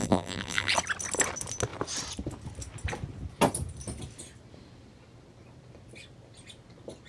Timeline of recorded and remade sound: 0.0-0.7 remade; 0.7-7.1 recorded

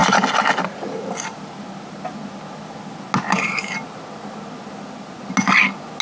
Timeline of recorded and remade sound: 0.0-6.0 recorded

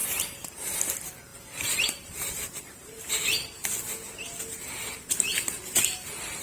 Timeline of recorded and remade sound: 0.0-0.8 remade; 0.8-1.3 recorded; 1.3-3.1 remade; 3.1-6.4 recorded